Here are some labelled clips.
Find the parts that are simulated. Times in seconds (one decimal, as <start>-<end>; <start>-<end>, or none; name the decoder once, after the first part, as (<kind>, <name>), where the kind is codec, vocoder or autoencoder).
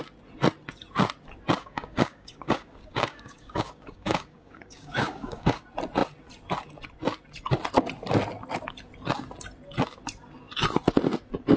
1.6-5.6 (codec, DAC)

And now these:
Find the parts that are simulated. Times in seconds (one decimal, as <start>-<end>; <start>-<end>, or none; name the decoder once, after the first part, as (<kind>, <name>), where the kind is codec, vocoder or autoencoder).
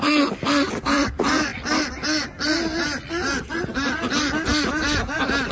none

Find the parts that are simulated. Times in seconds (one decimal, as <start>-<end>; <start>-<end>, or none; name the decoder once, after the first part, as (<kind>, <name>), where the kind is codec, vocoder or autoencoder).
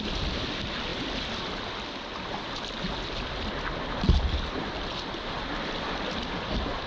none